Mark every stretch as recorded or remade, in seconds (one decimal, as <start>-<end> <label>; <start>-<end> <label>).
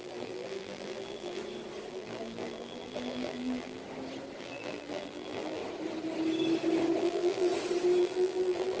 0.0-1.4 remade; 1.4-1.9 recorded; 1.9-3.8 remade; 3.8-4.4 recorded; 4.4-5.6 remade; 5.6-7.0 recorded; 7.0-7.5 remade; 7.5-8.0 recorded; 8.0-8.8 remade